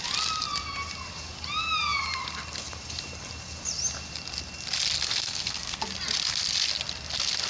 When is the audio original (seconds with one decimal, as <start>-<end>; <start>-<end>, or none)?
0.0-5.1; 5.8-7.5